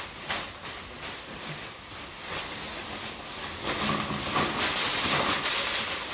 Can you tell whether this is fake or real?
real